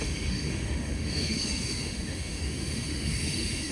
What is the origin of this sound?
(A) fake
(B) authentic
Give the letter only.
A